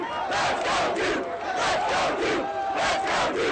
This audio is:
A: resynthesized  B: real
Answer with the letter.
B